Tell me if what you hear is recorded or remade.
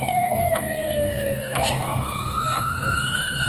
remade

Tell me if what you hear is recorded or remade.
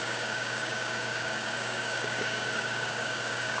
remade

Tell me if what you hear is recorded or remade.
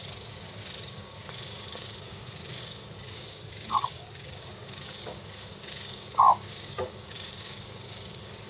remade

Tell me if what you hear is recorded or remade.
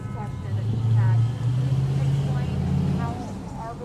recorded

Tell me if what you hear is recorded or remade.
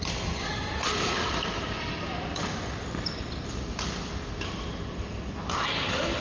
recorded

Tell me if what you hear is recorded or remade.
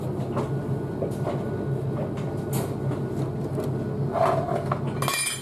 recorded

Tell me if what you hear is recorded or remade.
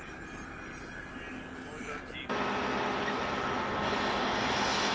recorded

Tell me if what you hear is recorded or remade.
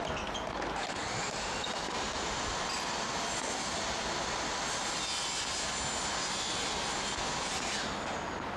recorded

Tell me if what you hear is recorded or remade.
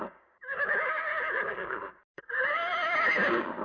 remade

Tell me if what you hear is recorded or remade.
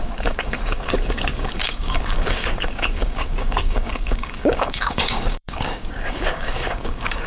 remade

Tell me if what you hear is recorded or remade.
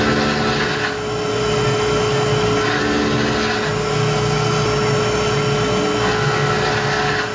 recorded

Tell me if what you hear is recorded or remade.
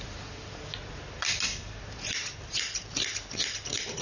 recorded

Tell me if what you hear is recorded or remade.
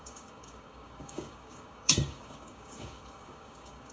remade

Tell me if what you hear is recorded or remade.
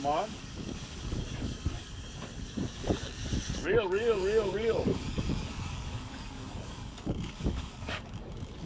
remade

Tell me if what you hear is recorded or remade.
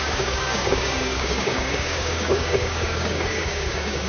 remade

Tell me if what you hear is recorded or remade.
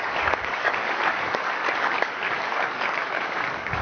remade